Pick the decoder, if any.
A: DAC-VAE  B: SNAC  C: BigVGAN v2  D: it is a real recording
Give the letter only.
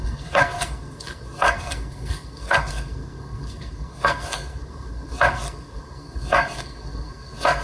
B